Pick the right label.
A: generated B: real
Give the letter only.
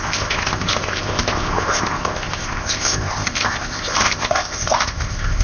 A